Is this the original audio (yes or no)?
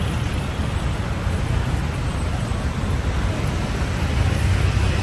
no